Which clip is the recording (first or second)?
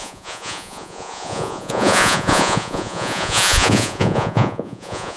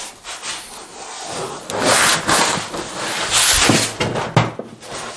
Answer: second